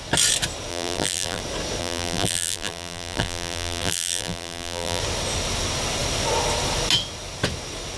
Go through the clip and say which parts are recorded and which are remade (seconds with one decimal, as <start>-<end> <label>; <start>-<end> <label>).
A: 0.0-0.7 recorded; 0.7-1.4 remade; 1.4-1.8 recorded; 1.8-5.0 remade; 5.0-8.0 recorded